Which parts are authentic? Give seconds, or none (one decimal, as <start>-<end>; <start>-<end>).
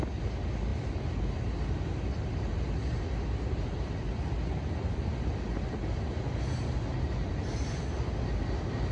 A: 0.0-8.9